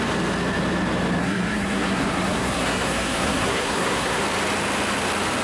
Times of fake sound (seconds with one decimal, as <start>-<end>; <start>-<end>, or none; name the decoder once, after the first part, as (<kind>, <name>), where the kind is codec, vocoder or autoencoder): 1.2-4.2 (codec, SNAC)